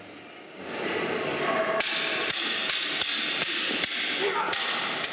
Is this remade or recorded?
recorded